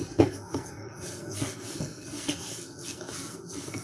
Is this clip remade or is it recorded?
remade